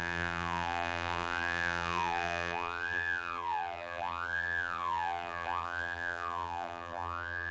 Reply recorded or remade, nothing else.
remade